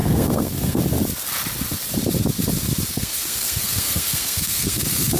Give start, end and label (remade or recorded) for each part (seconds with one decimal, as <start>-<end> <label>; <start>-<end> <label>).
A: 0.0-0.8 remade; 0.8-2.9 recorded; 2.9-5.2 remade